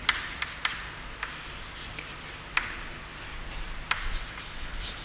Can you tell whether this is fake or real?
real